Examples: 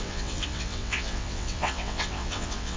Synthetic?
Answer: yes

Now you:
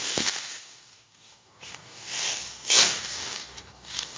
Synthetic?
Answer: yes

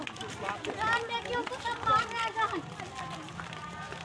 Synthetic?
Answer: no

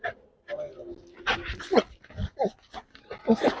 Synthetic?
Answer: no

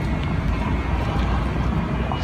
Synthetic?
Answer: no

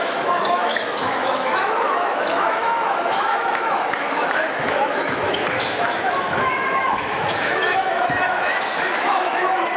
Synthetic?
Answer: yes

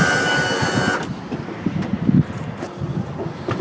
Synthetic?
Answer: no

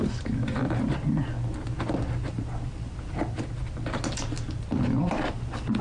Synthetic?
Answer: no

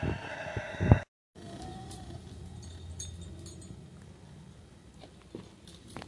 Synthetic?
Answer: no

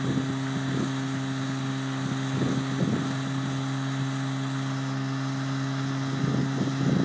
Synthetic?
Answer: no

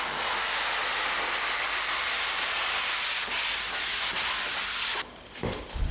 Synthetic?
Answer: no